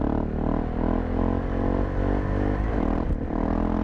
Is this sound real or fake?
real